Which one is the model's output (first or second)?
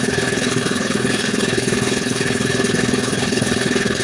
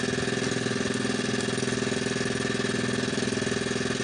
first